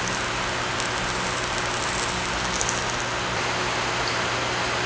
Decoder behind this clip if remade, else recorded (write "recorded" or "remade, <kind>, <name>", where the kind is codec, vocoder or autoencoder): recorded